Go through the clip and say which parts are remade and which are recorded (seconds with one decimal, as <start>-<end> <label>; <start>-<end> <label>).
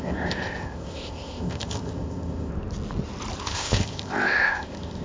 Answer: 0.0-2.5 remade; 2.5-3.4 recorded; 3.4-5.0 remade